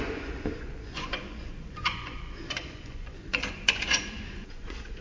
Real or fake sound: fake